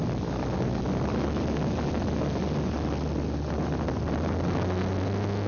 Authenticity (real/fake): real